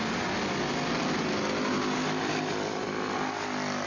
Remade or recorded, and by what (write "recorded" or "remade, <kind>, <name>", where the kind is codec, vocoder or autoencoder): recorded